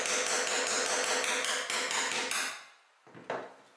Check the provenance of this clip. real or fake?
real